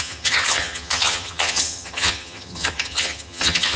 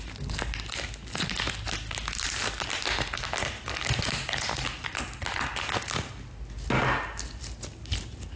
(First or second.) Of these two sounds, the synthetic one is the first